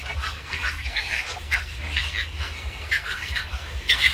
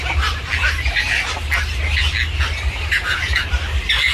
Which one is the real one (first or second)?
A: second